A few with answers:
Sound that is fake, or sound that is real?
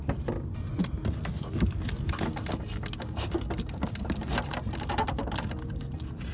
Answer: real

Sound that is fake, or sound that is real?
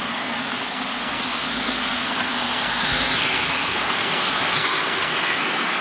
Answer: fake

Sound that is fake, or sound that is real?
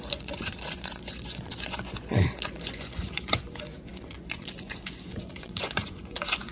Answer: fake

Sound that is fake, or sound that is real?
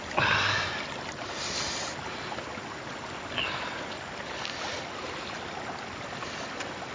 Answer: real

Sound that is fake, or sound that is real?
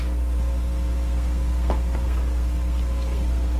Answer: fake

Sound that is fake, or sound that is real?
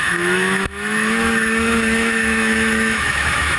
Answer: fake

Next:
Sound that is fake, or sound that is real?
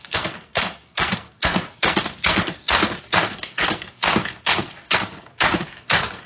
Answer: fake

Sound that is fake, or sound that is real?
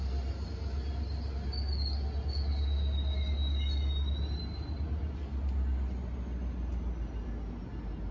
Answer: real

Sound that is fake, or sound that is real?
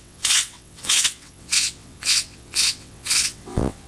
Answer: fake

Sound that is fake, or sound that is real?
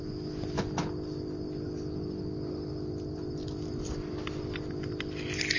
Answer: real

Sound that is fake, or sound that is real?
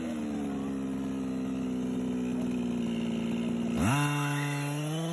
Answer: real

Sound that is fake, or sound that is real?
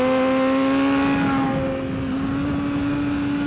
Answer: real